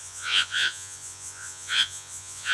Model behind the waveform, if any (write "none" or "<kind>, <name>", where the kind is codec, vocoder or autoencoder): vocoder, Vocos